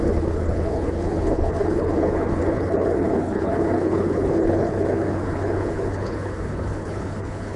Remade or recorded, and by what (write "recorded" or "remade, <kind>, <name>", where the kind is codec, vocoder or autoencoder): remade, codec, HILCodec